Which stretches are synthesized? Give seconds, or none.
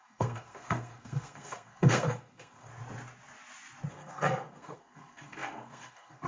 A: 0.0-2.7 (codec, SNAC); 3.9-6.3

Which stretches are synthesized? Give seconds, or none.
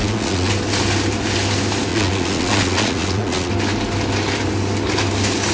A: 0.0-0.5 (vocoder, Vocos); 1.9-3.5